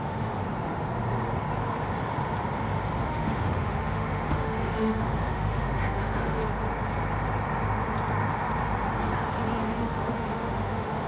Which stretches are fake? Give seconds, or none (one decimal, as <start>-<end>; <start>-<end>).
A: 0.0-0.4; 3.0-6.4; 9.6-11.1